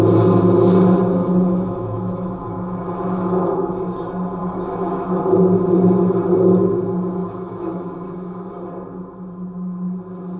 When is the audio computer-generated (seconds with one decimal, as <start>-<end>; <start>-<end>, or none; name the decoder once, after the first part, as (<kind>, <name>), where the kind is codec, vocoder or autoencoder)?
1.2-3.7 (autoencoder, DAC-VAE); 4.4-5.2; 7.2-8.5